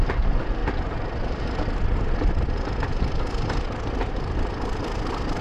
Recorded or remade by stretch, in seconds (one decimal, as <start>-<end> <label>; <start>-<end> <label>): 0.0-5.4 recorded

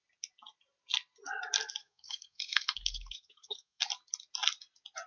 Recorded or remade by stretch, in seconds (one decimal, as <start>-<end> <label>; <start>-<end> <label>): 0.0-1.8 recorded; 1.8-3.8 remade; 3.8-5.1 recorded

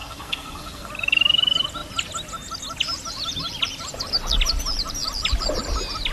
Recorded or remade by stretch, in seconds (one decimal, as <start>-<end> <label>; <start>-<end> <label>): 0.0-0.9 remade; 0.9-6.1 recorded

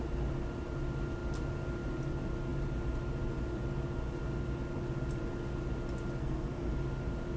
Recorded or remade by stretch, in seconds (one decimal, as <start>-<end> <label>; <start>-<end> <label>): 0.0-6.2 recorded; 6.2-6.7 remade; 6.7-7.4 recorded

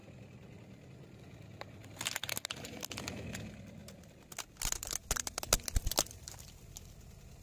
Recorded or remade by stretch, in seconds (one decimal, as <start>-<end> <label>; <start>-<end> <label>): 0.0-7.4 recorded

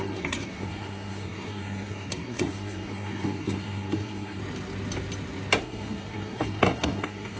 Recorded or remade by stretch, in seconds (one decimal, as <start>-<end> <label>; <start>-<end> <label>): 0.0-4.4 remade; 4.4-5.6 recorded; 5.6-7.4 remade